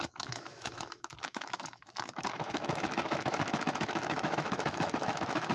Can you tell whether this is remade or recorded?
remade